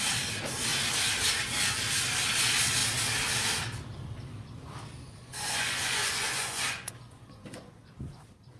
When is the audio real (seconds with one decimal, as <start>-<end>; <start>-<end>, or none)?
0.0-5.2; 8.0-8.6